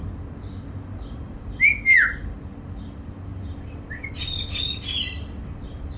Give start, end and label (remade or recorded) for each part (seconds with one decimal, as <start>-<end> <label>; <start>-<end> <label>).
0.0-6.0 recorded